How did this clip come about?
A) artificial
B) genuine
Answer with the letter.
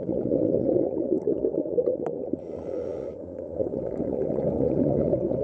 A